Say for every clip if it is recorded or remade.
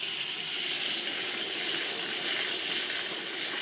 recorded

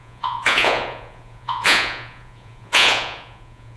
remade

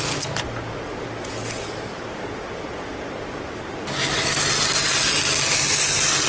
recorded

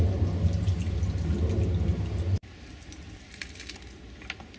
recorded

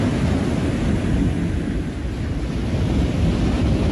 recorded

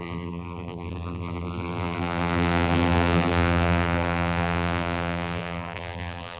remade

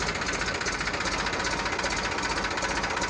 recorded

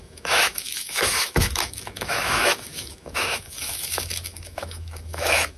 remade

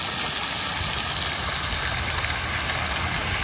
recorded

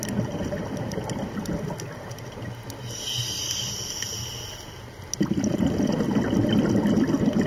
recorded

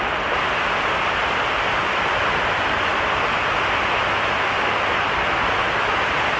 recorded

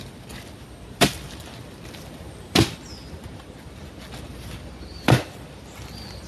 remade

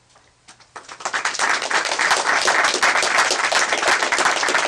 recorded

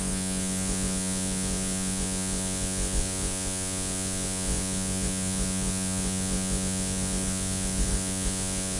remade